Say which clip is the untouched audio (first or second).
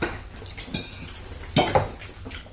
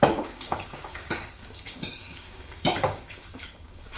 first